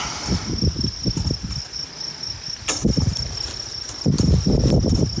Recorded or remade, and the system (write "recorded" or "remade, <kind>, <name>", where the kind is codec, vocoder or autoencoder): recorded